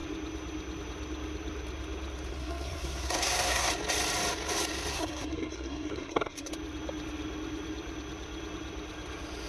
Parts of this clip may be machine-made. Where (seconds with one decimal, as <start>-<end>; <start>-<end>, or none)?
2.3-3.7; 4.9-6.5